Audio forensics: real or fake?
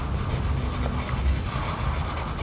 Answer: real